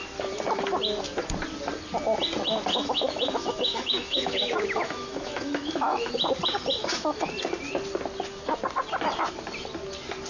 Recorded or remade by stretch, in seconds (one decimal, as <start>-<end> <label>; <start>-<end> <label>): 0.0-2.7 recorded; 2.7-6.1 remade; 6.1-6.8 recorded; 6.8-7.3 remade; 7.3-10.3 recorded